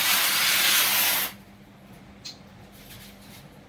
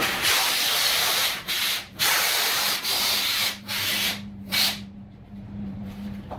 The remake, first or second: second